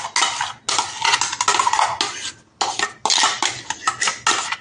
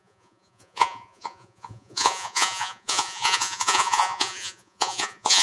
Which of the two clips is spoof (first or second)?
second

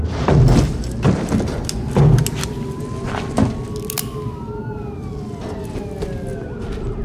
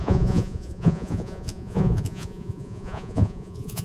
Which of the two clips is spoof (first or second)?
second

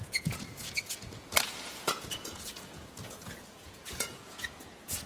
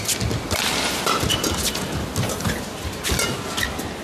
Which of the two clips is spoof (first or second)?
first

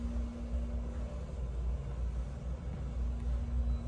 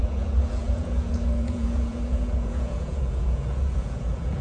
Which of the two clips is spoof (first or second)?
second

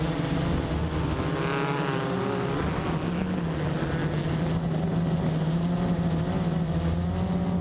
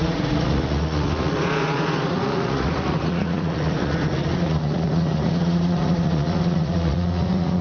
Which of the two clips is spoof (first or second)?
second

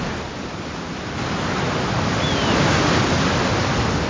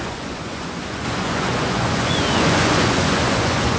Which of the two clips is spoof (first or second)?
second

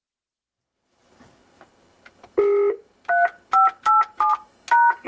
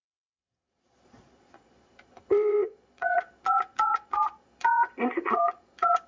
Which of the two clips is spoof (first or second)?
second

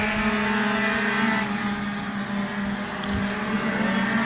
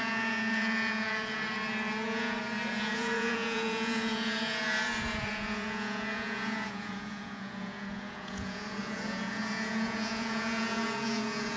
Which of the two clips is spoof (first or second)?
second